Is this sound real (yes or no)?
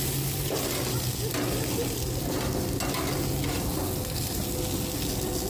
yes